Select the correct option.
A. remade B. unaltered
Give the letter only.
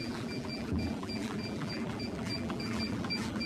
A